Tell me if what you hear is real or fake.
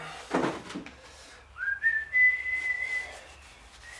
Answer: real